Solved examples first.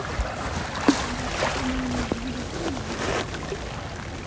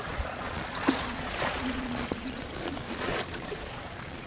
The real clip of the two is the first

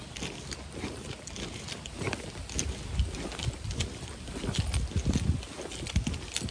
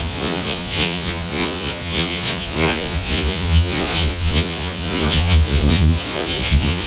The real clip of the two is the first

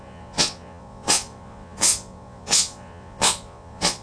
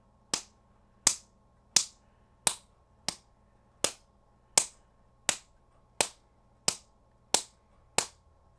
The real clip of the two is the second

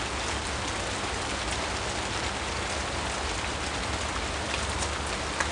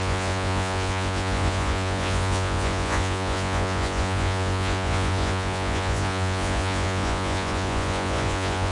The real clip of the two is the first